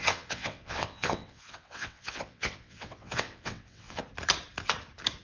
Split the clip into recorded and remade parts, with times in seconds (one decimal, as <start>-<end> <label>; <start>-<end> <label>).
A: 0.0-4.0 remade; 4.0-5.2 recorded